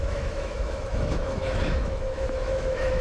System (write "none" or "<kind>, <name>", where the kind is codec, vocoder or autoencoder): autoencoder, DAC-VAE